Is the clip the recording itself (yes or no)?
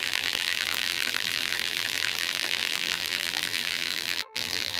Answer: no